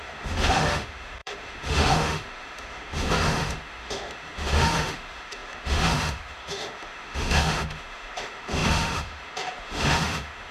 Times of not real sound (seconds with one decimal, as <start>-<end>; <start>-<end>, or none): 0.0-10.5